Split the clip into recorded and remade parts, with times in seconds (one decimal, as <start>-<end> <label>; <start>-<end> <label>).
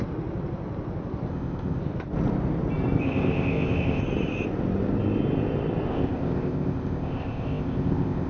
0.0-1.3 recorded; 1.3-1.8 remade; 1.8-3.0 recorded; 3.0-4.0 remade; 4.0-5.9 recorded; 5.9-8.3 remade